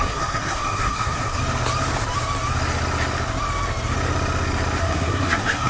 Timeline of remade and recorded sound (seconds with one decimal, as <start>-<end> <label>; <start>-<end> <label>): 0.0-1.4 remade; 1.4-4.8 recorded; 4.8-5.7 remade